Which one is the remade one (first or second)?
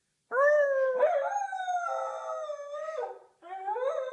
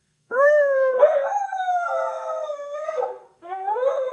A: second